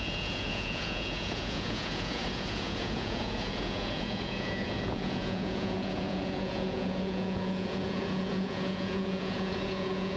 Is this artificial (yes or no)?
yes